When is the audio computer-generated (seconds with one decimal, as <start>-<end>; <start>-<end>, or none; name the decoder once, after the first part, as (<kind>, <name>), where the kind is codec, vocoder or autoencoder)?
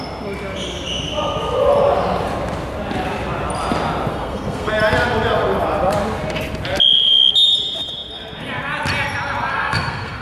4.1-4.7 (codec, SNAC); 9.5-10.2